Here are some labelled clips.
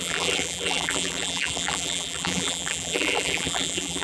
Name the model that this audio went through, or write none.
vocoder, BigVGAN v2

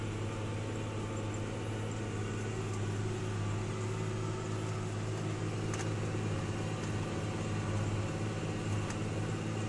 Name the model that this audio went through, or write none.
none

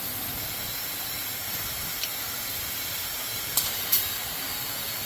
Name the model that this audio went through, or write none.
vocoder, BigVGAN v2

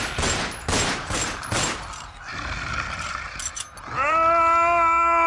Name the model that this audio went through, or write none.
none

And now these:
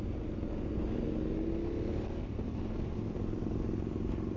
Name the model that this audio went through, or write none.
none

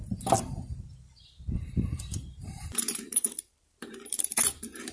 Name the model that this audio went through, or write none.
vocoder, BigVGAN v2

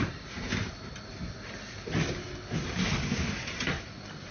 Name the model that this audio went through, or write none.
vocoder, BigVGAN v2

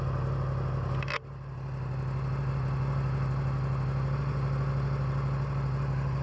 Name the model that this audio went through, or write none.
none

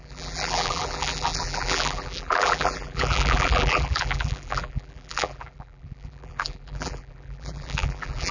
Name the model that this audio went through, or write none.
vocoder, BigVGAN v2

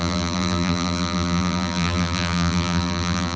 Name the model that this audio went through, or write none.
vocoder, BigVGAN v2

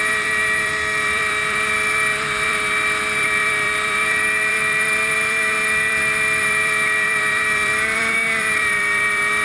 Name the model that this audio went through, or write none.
vocoder, BigVGAN v2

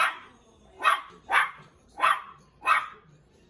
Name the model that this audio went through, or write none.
vocoder, BigVGAN v2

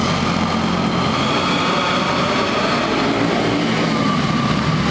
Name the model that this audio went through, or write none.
none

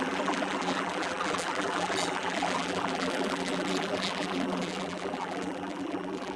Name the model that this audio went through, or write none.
vocoder, BigVGAN v2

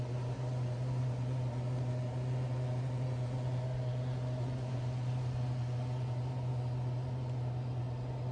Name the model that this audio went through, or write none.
none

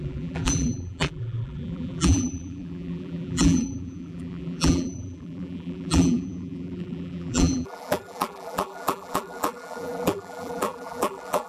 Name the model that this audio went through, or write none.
vocoder, BigVGAN v2